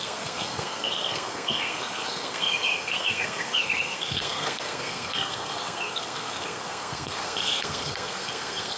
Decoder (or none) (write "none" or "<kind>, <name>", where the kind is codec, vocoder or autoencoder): codec, SNAC